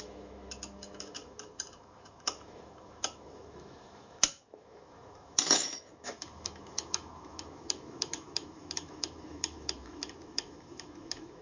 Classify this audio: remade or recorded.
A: remade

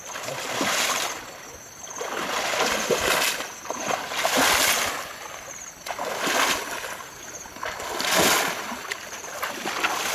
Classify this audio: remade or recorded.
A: recorded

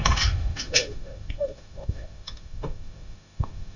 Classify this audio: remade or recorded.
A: remade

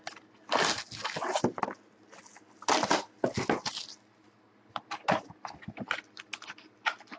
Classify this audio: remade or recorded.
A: recorded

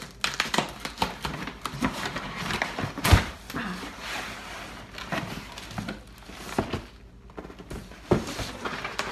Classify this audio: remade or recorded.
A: recorded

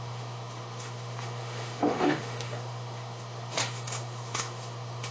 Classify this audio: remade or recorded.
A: remade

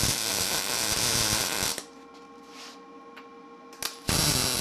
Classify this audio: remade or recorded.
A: recorded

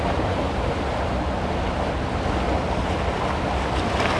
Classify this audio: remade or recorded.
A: recorded